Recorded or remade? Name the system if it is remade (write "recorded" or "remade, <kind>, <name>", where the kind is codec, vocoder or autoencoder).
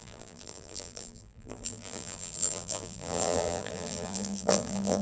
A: remade, vocoder, BigVGAN v2